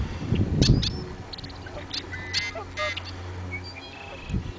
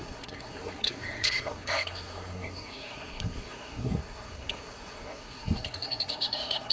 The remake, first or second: second